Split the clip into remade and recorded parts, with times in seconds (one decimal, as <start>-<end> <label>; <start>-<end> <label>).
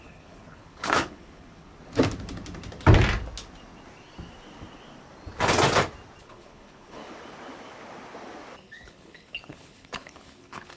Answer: 0.0-1.7 remade; 1.7-6.2 recorded; 6.2-7.0 remade; 7.0-8.6 recorded; 8.6-10.8 remade